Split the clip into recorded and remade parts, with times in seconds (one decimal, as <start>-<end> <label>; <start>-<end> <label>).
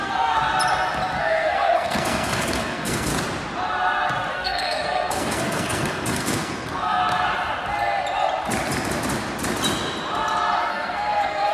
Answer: 0.0-0.4 remade; 0.4-1.2 recorded; 1.2-3.1 remade; 3.1-4.3 recorded; 4.3-7.0 remade; 7.0-10.7 recorded; 10.7-11.5 remade